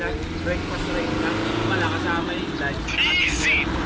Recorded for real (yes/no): yes